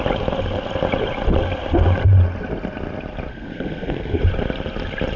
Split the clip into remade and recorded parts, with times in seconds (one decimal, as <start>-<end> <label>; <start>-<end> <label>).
0.0-3.3 recorded; 3.3-4.2 remade; 4.2-5.2 recorded